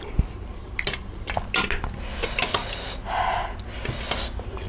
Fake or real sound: real